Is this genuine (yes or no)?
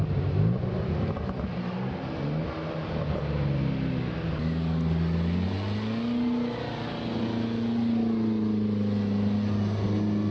yes